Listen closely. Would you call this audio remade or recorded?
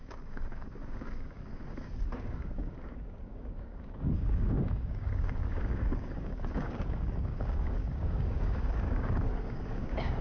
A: remade